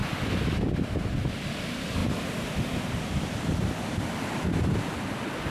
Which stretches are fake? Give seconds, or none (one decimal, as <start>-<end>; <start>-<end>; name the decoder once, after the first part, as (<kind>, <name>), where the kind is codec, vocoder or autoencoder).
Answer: 2.0-5.5 (vocoder, BigVGAN v2)